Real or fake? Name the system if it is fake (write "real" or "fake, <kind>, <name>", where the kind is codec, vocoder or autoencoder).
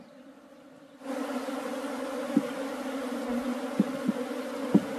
real